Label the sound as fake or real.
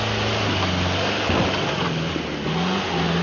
real